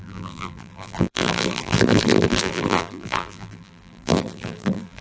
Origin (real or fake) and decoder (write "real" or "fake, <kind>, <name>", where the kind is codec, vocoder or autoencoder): fake, vocoder, BigVGAN v2